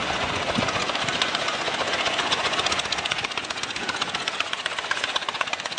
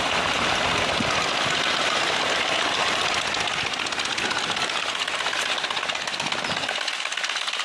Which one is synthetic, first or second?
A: first